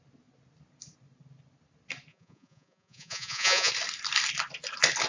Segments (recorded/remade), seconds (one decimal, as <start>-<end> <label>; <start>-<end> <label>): 0.0-2.1 recorded; 2.1-3.7 remade; 3.7-5.1 recorded